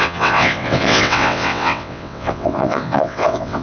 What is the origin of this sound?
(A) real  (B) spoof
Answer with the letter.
B